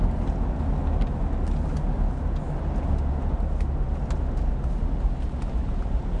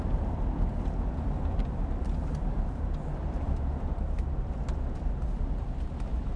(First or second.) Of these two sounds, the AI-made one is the second